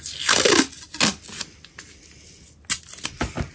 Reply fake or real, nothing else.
real